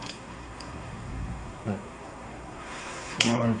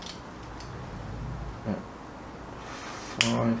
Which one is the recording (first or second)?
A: second